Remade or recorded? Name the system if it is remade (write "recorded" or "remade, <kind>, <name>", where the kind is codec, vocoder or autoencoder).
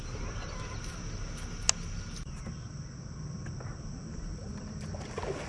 recorded